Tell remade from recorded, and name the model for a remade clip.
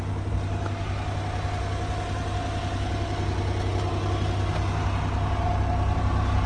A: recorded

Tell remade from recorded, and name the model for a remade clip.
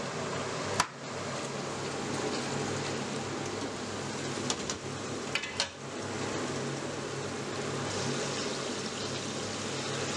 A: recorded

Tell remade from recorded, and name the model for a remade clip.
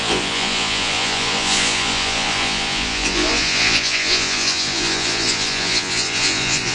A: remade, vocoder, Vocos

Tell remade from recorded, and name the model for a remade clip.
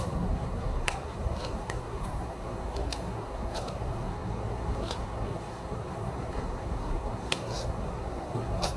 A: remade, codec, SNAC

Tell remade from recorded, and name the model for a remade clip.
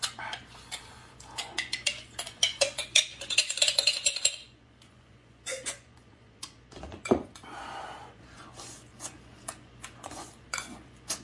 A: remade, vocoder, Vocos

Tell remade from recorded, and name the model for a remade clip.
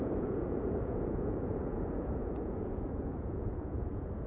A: remade, vocoder, Vocos